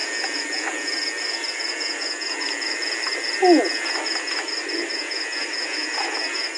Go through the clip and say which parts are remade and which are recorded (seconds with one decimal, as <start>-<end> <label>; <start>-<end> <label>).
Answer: 0.0-6.6 recorded